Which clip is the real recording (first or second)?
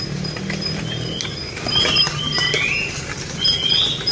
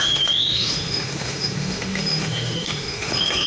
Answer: first